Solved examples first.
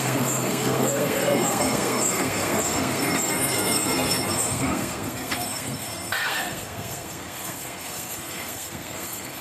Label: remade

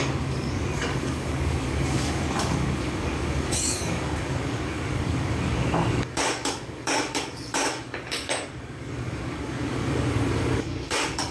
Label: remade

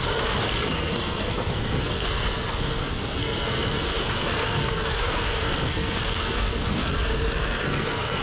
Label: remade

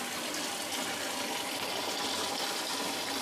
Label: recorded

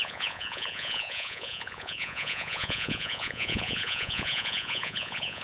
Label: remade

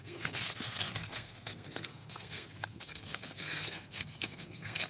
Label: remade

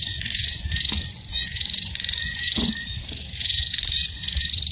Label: remade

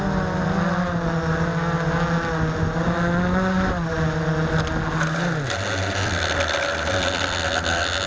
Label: recorded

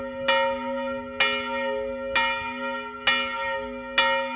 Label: recorded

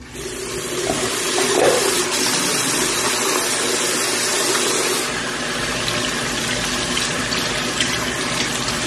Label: recorded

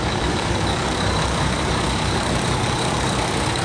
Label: remade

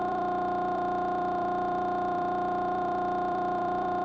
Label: remade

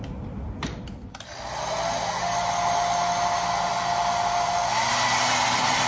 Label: recorded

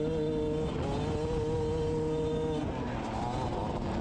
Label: recorded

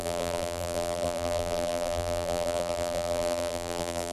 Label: remade